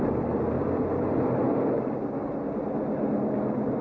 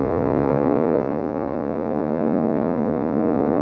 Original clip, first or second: first